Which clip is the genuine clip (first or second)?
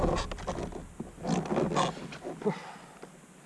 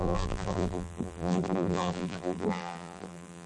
first